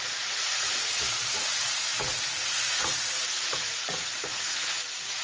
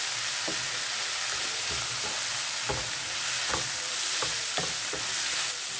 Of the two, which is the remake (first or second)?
first